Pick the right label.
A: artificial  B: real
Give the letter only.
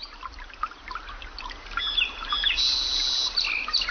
B